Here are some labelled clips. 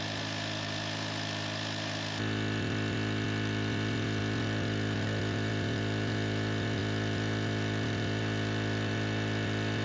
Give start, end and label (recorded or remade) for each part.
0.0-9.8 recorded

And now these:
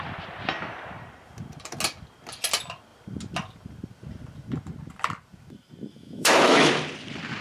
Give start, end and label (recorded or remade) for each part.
0.0-5.9 recorded; 5.9-6.7 remade; 6.7-7.4 recorded

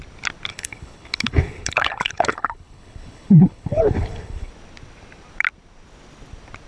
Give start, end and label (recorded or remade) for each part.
0.0-0.5 recorded; 0.5-4.5 remade; 4.5-6.7 recorded

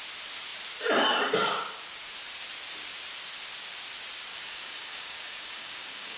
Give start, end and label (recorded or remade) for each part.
0.0-4.3 recorded; 4.3-6.2 remade